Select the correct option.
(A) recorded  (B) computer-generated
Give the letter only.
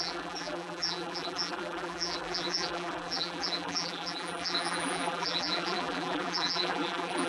B